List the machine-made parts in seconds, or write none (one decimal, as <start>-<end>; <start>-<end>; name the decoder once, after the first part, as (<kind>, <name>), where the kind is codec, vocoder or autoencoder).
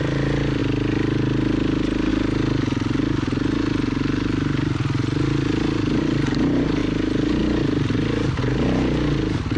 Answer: none